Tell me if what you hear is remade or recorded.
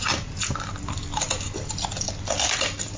recorded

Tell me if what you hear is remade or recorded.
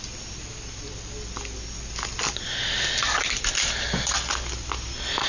recorded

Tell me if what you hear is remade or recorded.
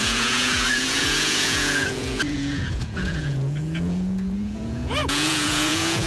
remade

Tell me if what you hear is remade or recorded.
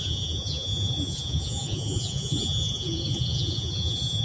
remade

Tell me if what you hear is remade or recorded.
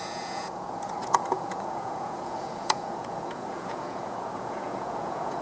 remade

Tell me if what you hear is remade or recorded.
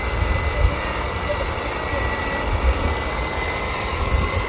recorded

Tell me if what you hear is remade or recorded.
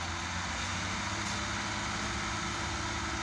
recorded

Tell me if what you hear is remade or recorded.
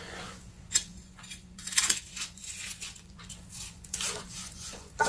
remade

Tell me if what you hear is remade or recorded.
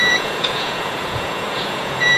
remade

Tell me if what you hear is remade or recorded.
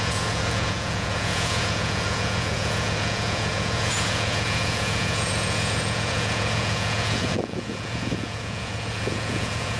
remade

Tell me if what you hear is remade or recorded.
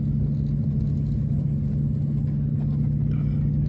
recorded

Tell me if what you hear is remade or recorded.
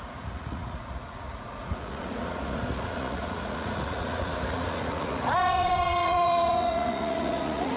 remade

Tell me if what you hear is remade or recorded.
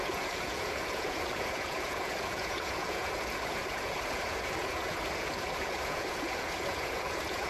remade